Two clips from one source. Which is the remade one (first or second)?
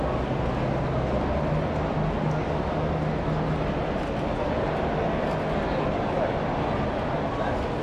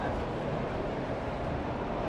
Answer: second